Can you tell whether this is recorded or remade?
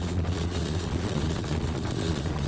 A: remade